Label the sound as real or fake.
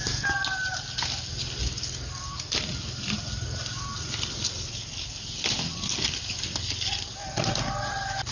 real